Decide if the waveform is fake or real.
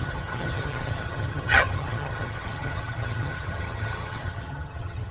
fake